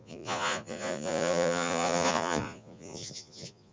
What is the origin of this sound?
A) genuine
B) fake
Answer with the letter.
B